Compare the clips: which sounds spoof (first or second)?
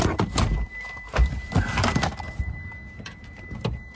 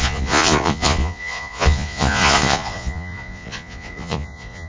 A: second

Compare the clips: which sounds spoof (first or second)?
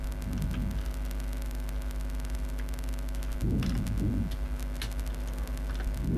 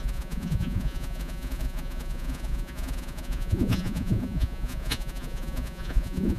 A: second